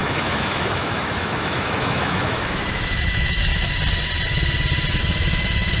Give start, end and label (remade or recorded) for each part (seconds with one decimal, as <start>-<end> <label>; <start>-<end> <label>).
0.0-3.5 remade; 3.5-5.0 recorded; 5.0-5.8 remade